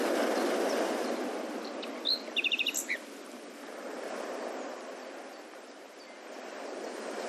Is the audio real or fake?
real